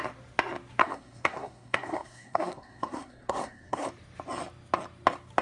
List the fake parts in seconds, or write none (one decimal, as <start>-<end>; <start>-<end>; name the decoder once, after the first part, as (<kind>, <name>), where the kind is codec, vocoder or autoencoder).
0.8-3.9 (codec, SNAC)